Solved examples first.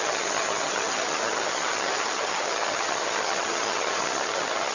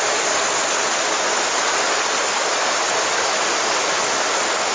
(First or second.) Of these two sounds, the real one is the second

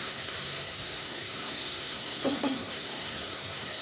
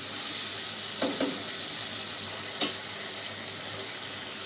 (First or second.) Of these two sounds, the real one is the second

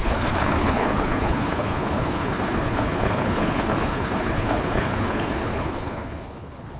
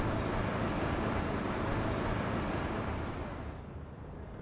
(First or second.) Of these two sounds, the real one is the second